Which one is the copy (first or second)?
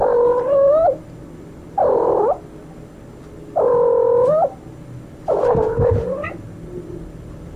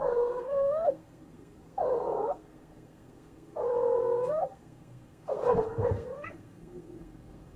second